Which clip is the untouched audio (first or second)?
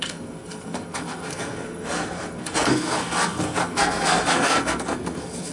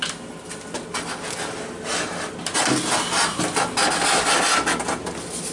second